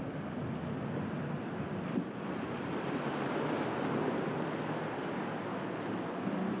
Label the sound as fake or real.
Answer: real